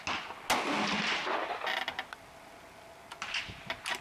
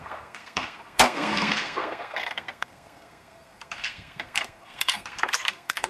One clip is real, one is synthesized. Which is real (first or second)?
first